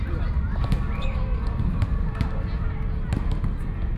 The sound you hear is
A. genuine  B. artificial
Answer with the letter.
A